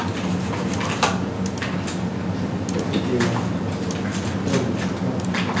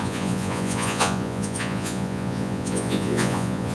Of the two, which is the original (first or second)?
first